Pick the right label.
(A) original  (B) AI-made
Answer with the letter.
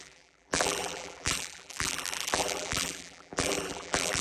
B